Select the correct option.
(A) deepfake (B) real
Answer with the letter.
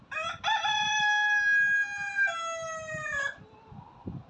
B